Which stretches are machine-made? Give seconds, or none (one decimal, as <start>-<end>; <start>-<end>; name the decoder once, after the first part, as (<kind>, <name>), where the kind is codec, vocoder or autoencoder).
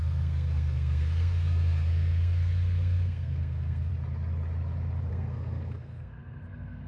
0.0-3.9 (codec, SNAC); 5.1-6.9